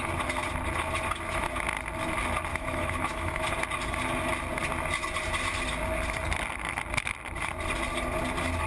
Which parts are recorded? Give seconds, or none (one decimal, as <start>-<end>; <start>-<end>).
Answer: 0.0-2.5; 3.4-8.7